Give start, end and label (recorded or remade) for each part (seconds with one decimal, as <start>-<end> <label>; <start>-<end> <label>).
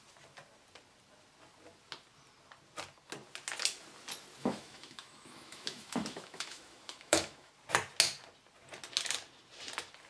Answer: 0.0-4.4 recorded; 4.4-7.5 remade; 7.5-10.1 recorded